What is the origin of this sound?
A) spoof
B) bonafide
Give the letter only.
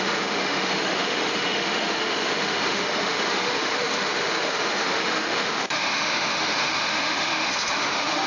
A